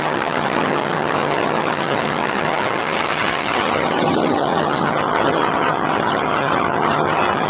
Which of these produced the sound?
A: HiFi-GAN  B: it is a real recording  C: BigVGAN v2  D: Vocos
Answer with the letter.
A